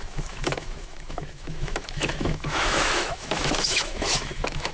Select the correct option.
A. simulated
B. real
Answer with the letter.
A